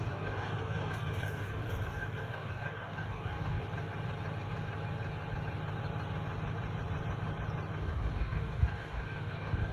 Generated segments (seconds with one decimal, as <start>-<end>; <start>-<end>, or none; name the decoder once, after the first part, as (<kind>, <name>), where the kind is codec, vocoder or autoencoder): 0.0-3.6 (codec, DAC); 7.8-9.7